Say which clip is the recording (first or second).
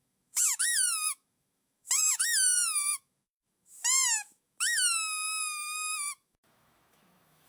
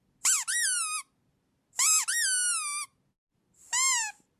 second